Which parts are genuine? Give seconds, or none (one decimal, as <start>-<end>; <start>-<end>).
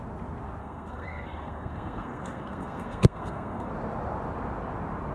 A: 0.0-0.6; 3.7-5.1